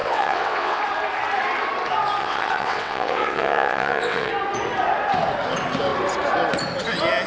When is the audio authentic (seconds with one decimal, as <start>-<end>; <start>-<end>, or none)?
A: 0.8-2.2; 4.3-7.3